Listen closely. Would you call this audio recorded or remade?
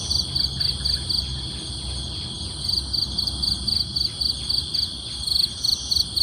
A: recorded